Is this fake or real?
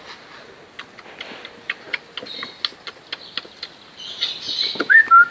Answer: real